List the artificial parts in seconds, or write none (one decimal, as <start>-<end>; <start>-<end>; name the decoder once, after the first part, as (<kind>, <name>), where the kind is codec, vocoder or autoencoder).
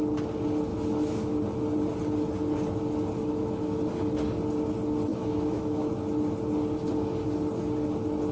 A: 0.7-1.4 (autoencoder, DAC-VAE); 3.2-3.8; 5.1-5.9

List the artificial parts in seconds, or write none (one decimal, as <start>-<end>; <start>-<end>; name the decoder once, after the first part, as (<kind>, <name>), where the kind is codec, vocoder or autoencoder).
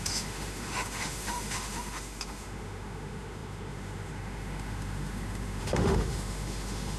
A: 0.0-7.0 (autoencoder, DAC-VAE)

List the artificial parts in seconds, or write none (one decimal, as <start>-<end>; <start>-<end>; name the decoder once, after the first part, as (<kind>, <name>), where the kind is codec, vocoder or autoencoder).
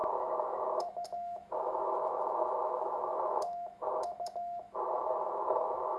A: 0.0-6.0 (autoencoder, DAC-VAE)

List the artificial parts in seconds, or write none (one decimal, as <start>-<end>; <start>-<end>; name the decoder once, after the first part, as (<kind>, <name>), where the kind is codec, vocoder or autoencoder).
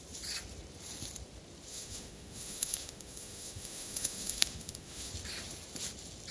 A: 1.7-5.1 (autoencoder, DAC-VAE)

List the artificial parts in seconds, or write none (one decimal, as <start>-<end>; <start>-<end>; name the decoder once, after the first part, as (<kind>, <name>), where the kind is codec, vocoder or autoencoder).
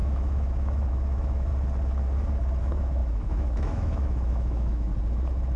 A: 0.0-1.5 (autoencoder, DAC-VAE); 2.6-4.9